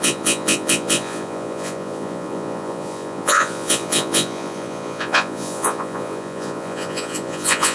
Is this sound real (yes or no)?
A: no